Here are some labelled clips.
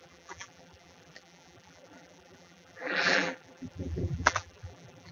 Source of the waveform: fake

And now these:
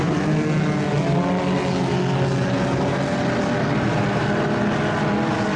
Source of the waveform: real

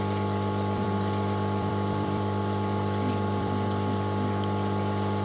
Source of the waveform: fake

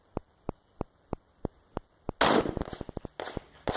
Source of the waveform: real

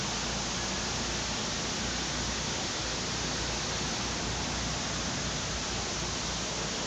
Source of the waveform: real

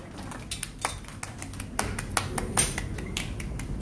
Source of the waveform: real